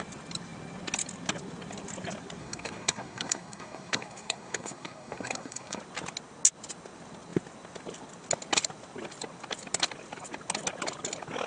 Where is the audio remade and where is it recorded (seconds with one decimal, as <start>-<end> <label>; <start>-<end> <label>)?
0.0-2.4 recorded; 2.4-5.8 remade; 5.8-11.5 recorded